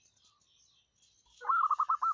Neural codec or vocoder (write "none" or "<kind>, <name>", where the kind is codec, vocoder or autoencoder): none